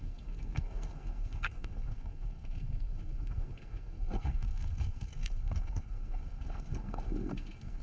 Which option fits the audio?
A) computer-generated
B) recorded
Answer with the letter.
A